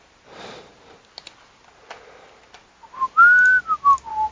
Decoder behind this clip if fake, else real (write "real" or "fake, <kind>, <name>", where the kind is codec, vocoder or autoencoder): real